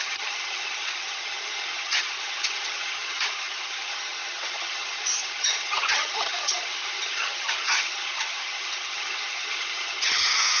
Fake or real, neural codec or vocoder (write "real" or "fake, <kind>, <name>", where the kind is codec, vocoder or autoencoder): fake, vocoder, HiFi-GAN